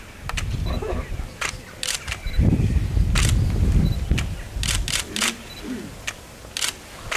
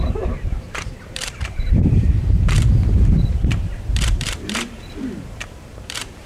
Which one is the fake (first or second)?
second